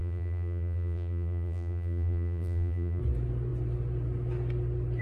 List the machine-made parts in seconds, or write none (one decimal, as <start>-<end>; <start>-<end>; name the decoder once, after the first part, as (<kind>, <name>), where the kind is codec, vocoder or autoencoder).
0.0-3.0 (vocoder, BigVGAN v2)